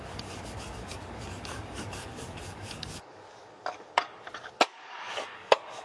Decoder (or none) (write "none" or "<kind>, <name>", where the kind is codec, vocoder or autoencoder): codec, DAC